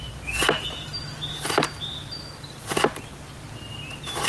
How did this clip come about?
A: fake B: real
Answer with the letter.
B